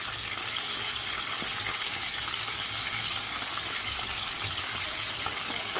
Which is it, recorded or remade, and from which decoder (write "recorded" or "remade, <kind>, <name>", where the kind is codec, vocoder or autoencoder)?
remade, codec, DAC